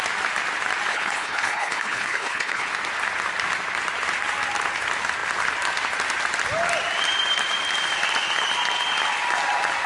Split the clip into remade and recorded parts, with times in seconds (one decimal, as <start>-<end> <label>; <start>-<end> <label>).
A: 0.0-0.9 recorded; 0.9-2.7 remade; 2.7-9.9 recorded